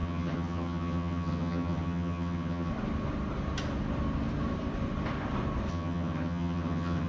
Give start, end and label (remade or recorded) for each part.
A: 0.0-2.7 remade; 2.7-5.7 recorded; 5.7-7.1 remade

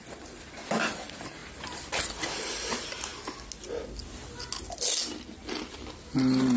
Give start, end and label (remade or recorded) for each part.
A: 0.0-6.6 recorded

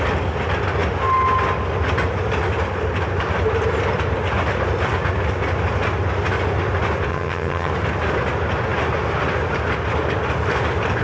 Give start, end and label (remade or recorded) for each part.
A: 0.0-7.1 recorded; 7.1-7.7 remade; 7.7-11.0 recorded

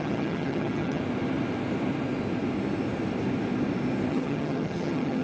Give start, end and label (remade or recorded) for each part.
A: 0.0-1.0 remade; 1.0-4.1 recorded; 4.1-5.2 remade

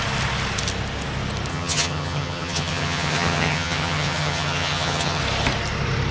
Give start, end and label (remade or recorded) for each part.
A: 0.0-1.5 recorded; 1.5-5.2 remade; 5.2-6.1 recorded